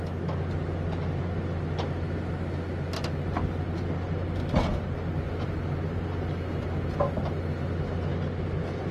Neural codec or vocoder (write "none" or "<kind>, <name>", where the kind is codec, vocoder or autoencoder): none